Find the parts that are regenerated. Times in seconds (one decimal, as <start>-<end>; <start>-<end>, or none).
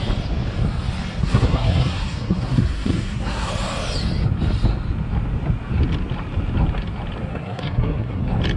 1.2-3.5; 7.3-8.2